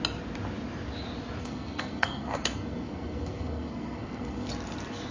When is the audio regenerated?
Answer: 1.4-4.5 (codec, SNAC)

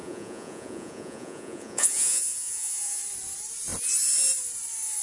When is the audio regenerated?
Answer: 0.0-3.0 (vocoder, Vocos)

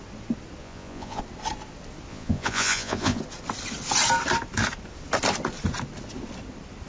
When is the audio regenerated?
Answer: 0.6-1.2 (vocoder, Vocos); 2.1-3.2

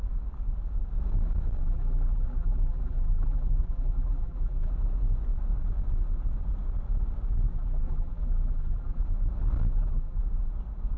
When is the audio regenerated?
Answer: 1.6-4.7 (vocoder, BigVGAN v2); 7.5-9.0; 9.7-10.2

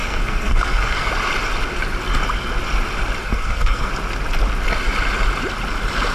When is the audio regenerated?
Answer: 0.0-1.1 (codec, SNAC); 3.2-3.9

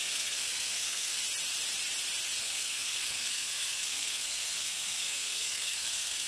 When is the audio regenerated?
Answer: 0.0-1.2 (codec, SNAC); 2.4-6.3

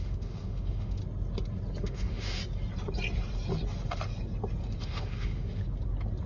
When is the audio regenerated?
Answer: 0.0-1.0 (autoencoder, DAC-VAE); 1.8-2.4; 4.8-5.6

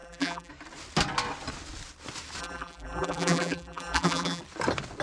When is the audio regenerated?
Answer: 0.0-0.5 (vocoder, BigVGAN v2); 2.4-4.4